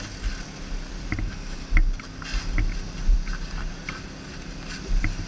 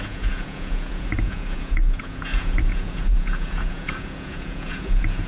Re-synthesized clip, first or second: second